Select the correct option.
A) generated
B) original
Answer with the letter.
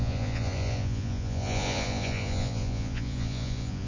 A